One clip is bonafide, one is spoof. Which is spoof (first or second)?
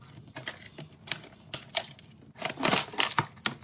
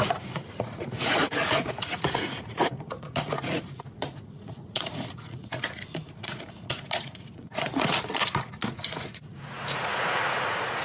second